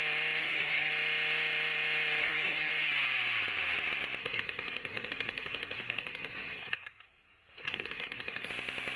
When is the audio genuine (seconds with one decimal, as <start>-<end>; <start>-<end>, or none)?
0.0-0.4; 0.9-2.2; 2.7-4.2; 8.5-9.0